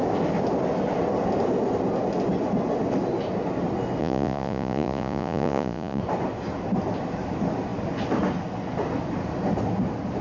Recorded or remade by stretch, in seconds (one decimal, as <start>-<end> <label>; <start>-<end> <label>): 0.0-4.0 recorded; 4.0-6.0 remade; 6.0-10.2 recorded